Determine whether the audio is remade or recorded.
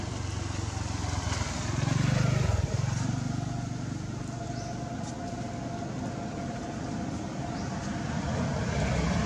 recorded